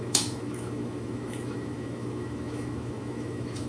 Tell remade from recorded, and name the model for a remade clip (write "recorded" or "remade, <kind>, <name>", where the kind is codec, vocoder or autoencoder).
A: remade, autoencoder, DAC-VAE